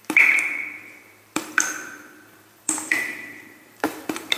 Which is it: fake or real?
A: fake